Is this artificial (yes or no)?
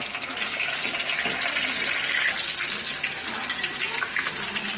no